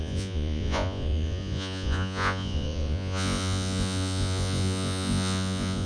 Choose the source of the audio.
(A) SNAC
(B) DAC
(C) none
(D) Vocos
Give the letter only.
D